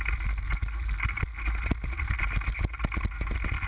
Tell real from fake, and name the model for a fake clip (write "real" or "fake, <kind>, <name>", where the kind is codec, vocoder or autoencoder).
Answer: real